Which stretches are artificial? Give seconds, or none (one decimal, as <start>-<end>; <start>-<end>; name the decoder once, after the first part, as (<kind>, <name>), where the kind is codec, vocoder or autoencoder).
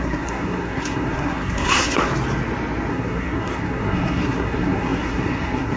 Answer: 0.0-2.1 (codec, SNAC); 2.9-5.8